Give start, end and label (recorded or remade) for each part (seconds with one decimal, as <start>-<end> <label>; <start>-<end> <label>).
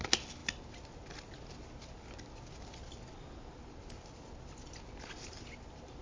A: 0.0-6.0 recorded